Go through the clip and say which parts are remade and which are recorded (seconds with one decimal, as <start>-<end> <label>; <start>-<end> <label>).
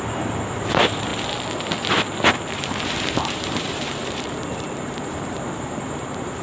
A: 0.0-1.1 remade; 1.1-2.3 recorded; 2.3-6.4 remade